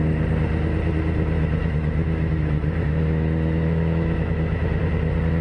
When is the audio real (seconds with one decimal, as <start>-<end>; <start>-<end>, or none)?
0.0-1.6; 4.8-5.4